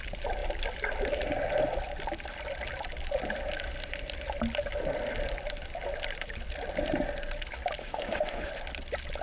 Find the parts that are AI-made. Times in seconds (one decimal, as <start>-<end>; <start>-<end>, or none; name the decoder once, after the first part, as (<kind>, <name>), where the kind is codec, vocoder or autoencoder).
7.8-8.5 (autoencoder, DAC-VAE)